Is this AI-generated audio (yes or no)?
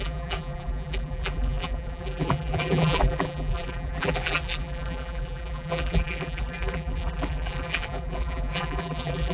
yes